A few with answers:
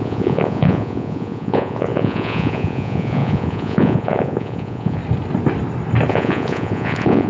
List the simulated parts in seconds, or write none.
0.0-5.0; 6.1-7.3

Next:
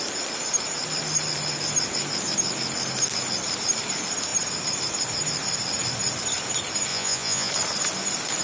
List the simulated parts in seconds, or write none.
6.9-7.5